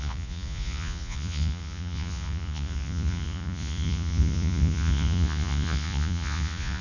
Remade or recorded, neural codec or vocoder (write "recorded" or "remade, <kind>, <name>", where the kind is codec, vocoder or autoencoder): remade, vocoder, Vocos